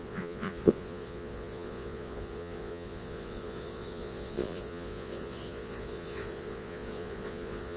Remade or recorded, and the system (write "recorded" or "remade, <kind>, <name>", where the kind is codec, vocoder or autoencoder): remade, vocoder, Vocos